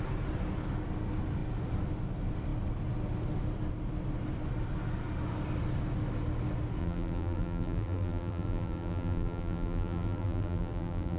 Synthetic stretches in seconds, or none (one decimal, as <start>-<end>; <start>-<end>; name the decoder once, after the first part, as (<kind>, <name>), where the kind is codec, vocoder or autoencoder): 6.8-11.2 (vocoder, BigVGAN v2)